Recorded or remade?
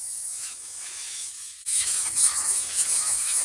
remade